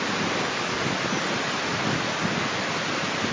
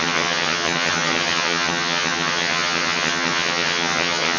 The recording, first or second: first